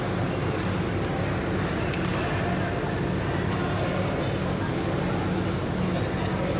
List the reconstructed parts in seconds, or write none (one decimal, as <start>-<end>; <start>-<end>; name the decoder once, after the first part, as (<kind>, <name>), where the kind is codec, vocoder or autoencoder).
4.4-5.0 (codec, DAC)